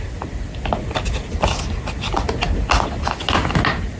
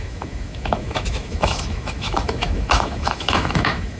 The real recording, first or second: first